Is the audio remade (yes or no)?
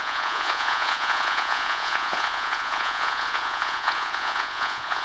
yes